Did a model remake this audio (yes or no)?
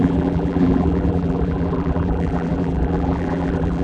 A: yes